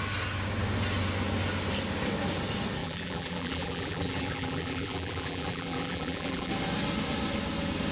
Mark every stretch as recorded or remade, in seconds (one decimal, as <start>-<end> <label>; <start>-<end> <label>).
0.0-2.8 recorded; 2.8-6.5 remade; 6.5-7.9 recorded